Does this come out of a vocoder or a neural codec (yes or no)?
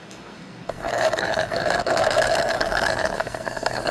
yes